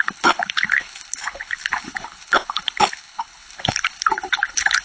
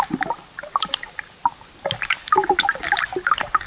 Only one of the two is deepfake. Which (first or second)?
first